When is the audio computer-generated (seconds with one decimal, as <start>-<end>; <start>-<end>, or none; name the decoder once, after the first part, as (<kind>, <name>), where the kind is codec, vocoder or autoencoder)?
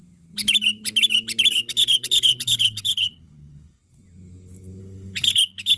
1.5-3.8 (codec, HILCodec); 4.8-5.8